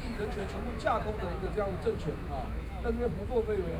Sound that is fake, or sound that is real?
fake